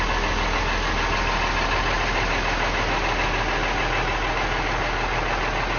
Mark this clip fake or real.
real